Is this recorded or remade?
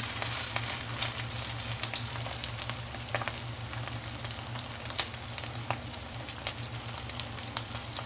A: recorded